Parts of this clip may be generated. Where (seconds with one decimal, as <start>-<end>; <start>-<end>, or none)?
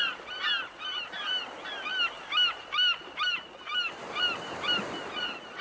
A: none